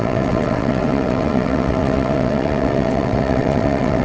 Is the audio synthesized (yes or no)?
yes